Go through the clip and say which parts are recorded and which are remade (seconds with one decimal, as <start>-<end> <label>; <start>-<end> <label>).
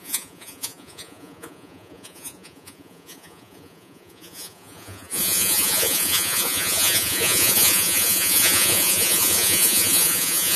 0.0-10.6 remade